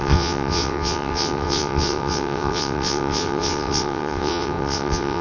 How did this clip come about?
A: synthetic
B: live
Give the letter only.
A